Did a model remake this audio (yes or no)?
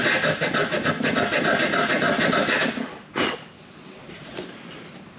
no